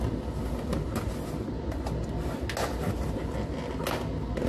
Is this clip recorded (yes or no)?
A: yes